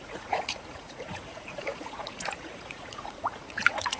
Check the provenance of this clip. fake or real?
fake